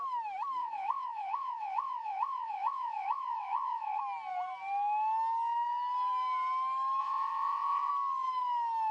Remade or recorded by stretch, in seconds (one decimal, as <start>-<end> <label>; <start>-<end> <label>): 0.0-0.6 recorded; 0.6-4.0 remade; 4.0-7.0 recorded; 7.0-7.9 remade; 7.9-8.9 recorded